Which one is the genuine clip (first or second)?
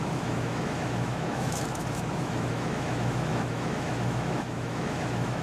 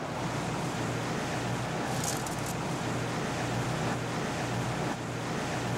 second